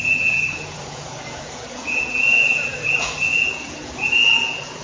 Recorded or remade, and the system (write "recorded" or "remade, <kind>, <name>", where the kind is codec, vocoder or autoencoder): remade, vocoder, Vocos